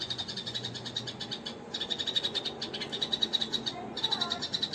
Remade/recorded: remade